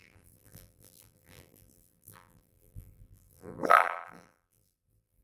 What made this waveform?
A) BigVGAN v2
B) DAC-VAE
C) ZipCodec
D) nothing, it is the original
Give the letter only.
A